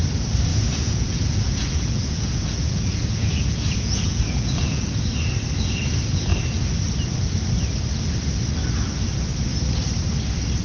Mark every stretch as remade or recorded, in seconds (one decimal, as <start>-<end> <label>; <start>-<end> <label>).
0.0-0.5 recorded; 0.5-4.9 remade; 4.9-10.6 recorded